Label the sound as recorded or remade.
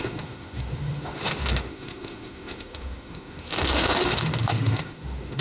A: remade